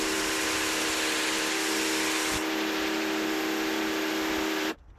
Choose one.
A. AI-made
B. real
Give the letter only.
B